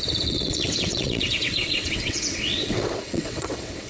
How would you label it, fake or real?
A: fake